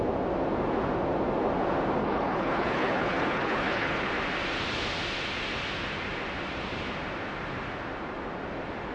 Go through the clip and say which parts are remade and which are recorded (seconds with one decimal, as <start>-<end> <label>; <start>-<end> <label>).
0.0-2.0 recorded; 2.0-4.1 remade; 4.1-8.9 recorded